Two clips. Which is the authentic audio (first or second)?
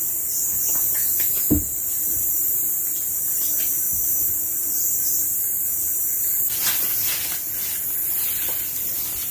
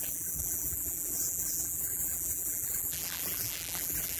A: first